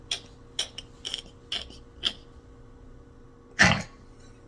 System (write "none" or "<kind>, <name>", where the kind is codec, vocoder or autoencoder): none